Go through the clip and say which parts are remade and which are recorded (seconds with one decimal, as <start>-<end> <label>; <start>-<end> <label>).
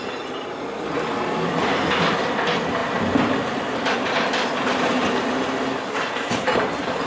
0.0-2.8 recorded; 2.8-7.1 remade